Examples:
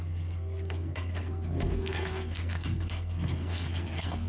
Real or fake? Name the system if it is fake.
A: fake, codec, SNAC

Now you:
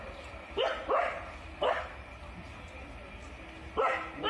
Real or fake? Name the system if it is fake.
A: real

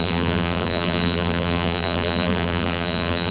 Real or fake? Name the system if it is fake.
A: fake, vocoder, BigVGAN v2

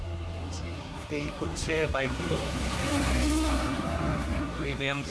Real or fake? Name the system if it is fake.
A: fake, codec, SNAC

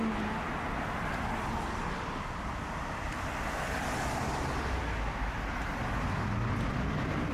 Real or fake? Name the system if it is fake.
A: real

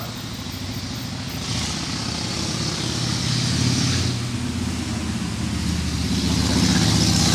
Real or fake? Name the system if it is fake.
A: real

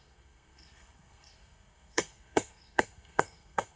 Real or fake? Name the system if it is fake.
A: fake, codec, SNAC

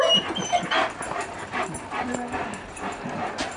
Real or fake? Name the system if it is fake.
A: real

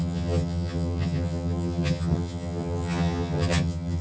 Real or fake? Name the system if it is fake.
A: fake, vocoder, HiFi-GAN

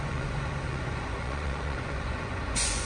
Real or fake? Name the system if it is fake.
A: fake, vocoder, Vocos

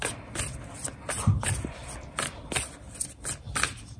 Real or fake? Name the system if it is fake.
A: real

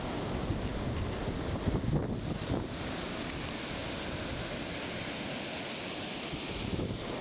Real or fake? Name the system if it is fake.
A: real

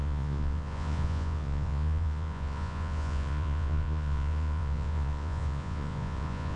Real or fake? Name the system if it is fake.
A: fake, vocoder, Vocos